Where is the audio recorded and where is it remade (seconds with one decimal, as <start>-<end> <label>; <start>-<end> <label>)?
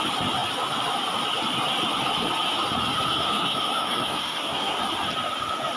0.0-3.1 recorded; 3.1-4.8 remade; 4.8-5.8 recorded